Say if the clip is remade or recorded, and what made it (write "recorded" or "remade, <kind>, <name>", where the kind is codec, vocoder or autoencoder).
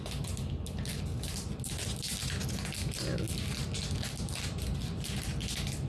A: recorded